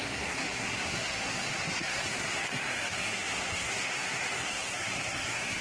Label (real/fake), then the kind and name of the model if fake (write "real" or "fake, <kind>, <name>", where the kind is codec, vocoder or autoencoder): fake, codec, SNAC